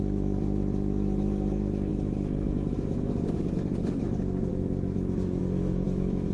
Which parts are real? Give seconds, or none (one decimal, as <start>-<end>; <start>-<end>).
none